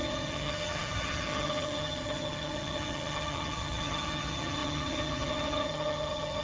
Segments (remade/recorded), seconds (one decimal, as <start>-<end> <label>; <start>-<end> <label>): 0.0-6.4 remade